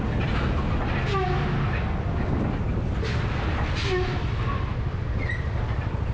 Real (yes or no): yes